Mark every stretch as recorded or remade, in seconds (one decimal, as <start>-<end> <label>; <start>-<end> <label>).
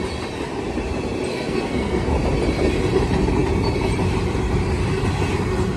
0.0-1.3 recorded; 1.3-2.1 remade; 2.1-5.8 recorded